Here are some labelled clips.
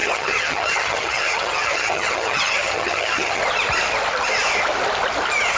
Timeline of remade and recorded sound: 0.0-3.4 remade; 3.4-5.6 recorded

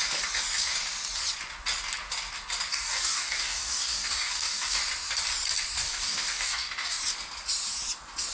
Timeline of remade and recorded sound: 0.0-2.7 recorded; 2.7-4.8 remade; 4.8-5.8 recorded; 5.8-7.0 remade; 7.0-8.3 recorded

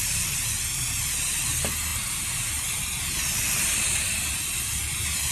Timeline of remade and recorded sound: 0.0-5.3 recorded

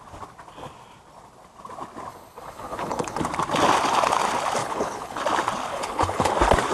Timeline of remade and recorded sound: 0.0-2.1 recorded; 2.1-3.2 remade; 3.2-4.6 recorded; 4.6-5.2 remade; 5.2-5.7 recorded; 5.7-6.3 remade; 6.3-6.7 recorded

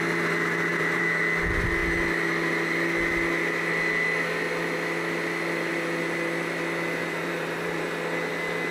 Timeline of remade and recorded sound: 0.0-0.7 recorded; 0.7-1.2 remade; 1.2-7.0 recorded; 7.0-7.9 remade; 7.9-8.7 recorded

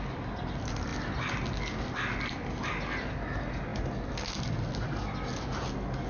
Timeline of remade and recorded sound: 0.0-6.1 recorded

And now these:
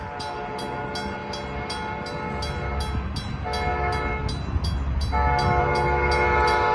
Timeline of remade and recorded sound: 0.0-6.7 recorded